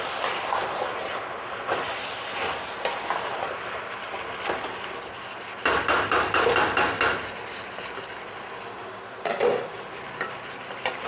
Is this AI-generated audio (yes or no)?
no